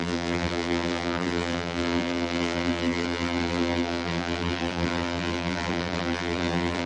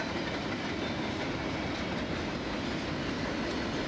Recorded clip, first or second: second